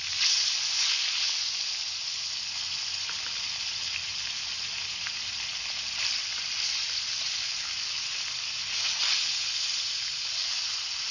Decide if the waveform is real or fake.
real